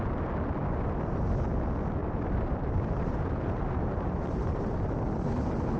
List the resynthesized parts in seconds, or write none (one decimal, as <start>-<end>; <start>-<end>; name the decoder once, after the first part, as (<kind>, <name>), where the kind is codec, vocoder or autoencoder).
2.0-4.9 (vocoder, BigVGAN v2)

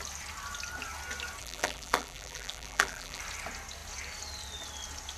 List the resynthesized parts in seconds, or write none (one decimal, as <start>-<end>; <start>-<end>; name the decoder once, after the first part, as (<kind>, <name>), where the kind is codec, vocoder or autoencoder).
1.4-3.2 (vocoder, BigVGAN v2)

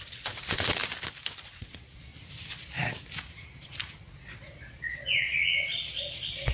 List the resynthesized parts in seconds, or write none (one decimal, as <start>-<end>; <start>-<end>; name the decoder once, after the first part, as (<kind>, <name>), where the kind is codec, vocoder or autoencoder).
0.0-0.8 (vocoder, Vocos); 1.4-2.1; 3.9-6.5

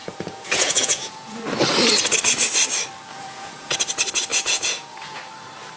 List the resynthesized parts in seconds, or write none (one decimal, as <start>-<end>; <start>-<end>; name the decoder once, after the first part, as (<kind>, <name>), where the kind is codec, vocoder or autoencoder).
0.0-1.4 (vocoder, Vocos); 3.1-3.8; 4.3-5.2

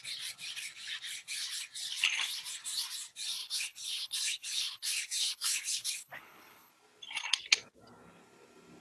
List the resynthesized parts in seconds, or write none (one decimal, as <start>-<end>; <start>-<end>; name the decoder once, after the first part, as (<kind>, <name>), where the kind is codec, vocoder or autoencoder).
3.4-6.7 (codec, HILCodec)

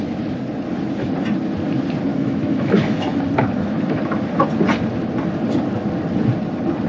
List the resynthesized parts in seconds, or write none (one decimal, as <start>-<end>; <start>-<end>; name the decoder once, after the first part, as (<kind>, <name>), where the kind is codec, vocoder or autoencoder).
2.1-4.1 (autoencoder, DAC-VAE)

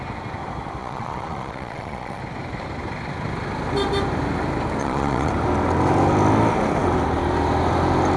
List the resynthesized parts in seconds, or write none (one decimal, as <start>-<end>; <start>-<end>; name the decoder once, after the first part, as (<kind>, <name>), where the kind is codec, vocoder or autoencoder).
0.8-2.2 (vocoder, Vocos); 4.8-5.3